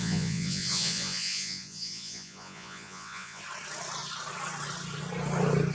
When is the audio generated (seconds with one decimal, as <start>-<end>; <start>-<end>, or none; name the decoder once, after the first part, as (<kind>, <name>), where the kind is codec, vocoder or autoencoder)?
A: 0.0-3.4 (vocoder, Vocos)

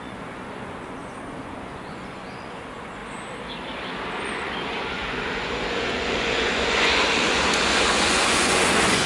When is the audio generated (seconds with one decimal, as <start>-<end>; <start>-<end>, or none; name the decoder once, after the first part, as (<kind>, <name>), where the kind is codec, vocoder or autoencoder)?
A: 0.0-3.0 (vocoder, Vocos); 4.2-9.1

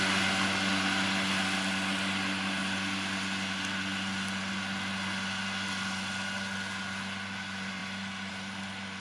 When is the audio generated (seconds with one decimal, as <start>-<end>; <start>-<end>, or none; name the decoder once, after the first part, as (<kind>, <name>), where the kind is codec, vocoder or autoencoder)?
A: none

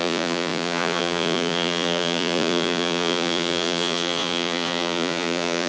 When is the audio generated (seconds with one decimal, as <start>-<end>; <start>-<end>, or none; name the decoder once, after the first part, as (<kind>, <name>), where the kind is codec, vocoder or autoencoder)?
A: 0.0-5.7 (vocoder, Vocos)

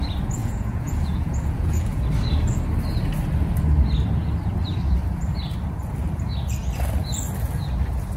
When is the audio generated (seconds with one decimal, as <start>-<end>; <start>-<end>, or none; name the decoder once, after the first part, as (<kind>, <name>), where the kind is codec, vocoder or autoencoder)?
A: 0.4-2.0 (vocoder, Vocos)

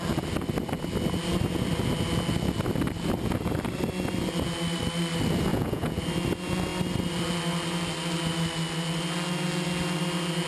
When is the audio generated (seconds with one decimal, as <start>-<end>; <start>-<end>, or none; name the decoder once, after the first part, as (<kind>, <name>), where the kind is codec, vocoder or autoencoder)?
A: 5.5-6.0 (vocoder, Vocos)